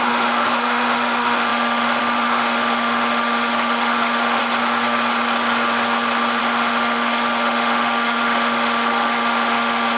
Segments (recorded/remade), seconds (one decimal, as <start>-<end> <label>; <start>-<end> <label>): 0.0-4.4 remade; 4.4-6.4 recorded; 6.4-10.0 remade